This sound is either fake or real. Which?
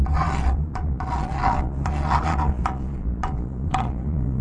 fake